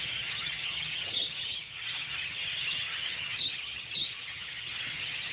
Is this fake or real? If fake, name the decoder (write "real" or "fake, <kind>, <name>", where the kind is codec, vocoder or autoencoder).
fake, vocoder, HiFi-GAN